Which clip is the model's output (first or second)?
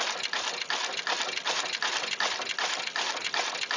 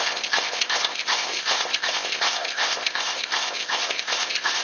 second